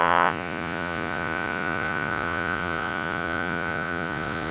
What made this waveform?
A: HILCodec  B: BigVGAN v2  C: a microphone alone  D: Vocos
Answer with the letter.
D